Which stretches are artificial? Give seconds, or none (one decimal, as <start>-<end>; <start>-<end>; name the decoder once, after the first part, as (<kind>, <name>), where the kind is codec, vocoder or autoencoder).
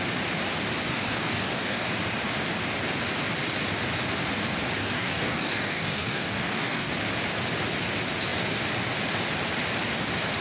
0.9-1.9 (codec, DAC); 4.8-6.9